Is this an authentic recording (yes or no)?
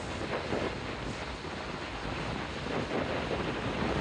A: yes